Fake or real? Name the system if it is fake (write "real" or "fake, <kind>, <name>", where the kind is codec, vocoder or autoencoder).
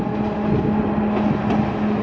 real